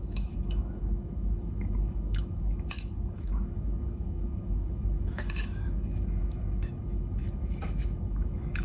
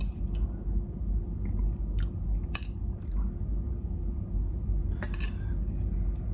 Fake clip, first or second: first